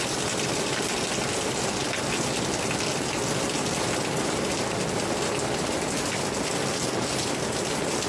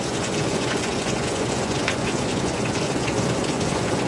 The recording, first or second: first